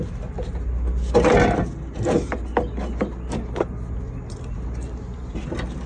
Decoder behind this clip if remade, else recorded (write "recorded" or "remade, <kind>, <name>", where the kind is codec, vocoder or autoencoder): recorded